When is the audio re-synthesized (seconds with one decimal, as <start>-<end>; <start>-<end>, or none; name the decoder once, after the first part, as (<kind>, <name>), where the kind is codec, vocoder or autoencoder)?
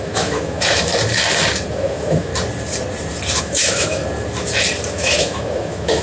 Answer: 0.0-0.9 (autoencoder, DAC-VAE); 1.7-2.3; 3.4-4.0; 4.9-6.0